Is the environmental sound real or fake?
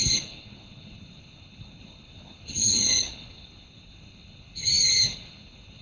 fake